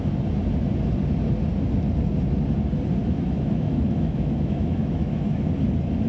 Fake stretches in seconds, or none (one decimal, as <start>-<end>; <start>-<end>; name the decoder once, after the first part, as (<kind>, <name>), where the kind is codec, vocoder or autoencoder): 3.0-5.5 (autoencoder, DAC-VAE)